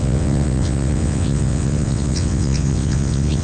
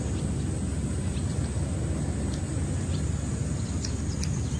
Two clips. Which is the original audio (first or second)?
second